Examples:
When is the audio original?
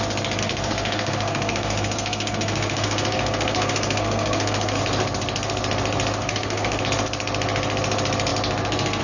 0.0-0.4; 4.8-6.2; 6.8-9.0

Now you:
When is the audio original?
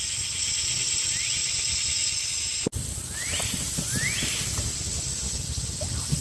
0.0-6.2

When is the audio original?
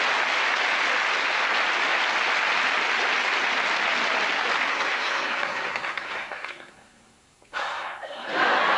0.0-4.7; 8.3-8.8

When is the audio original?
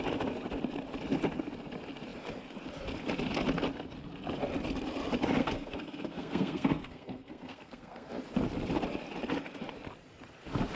0.0-5.4; 8.1-10.8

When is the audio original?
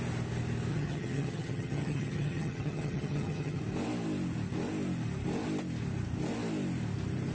0.0-0.7; 3.6-7.3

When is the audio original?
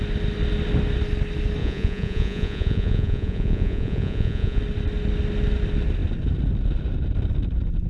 0.0-1.6; 4.6-7.9